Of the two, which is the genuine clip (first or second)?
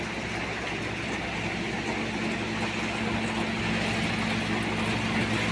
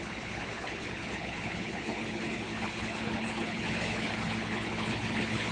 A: first